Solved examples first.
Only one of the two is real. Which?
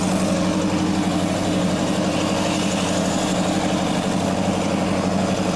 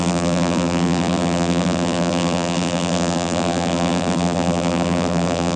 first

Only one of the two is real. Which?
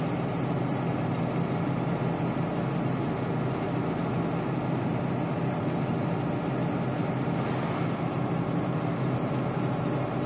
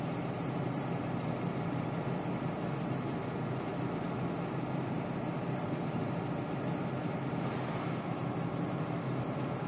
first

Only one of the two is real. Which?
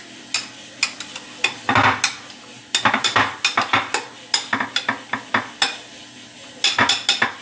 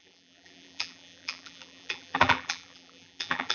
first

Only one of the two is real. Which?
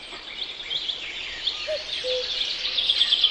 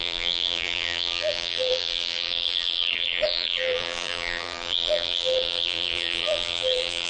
first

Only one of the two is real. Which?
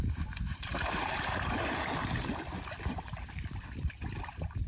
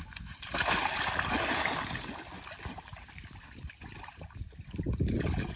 second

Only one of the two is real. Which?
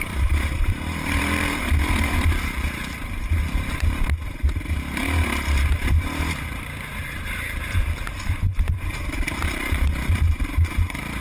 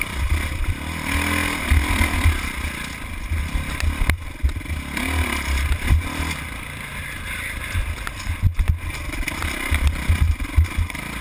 second